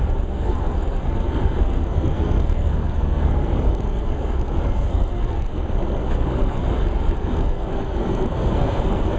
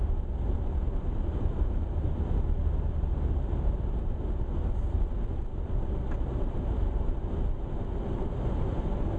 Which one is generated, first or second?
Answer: first